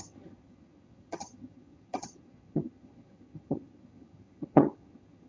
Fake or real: fake